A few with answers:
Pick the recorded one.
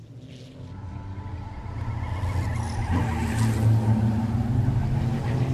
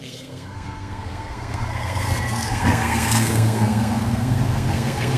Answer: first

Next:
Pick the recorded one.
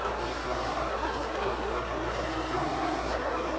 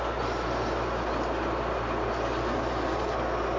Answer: second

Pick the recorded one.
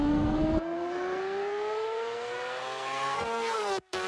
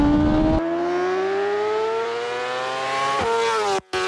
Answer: second